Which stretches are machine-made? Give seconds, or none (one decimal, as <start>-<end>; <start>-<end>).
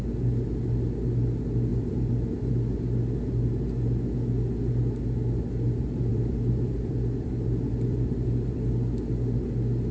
1.7-2.5; 6.1-8.6